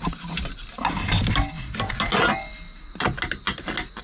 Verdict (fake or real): real